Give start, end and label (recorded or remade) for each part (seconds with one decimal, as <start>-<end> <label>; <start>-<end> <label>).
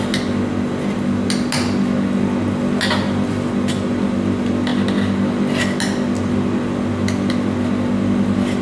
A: 0.0-8.6 recorded